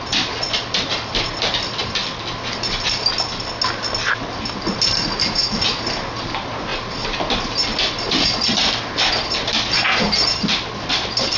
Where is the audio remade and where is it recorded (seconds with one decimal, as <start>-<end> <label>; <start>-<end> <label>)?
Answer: 0.0-11.4 recorded